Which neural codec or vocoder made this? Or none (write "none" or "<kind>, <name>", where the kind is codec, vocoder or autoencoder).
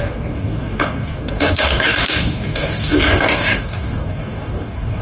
codec, DAC